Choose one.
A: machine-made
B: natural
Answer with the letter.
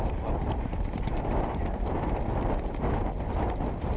B